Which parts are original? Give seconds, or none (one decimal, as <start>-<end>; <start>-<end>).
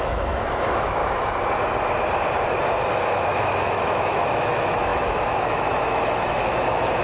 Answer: 1.0-3.1